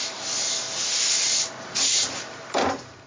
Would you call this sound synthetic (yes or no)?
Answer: no